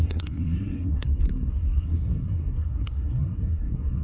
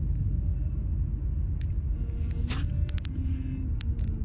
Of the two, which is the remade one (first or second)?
first